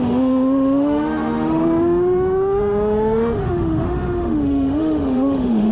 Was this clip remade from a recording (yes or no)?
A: yes